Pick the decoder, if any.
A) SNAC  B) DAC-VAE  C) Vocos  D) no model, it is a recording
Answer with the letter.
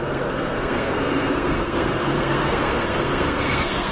A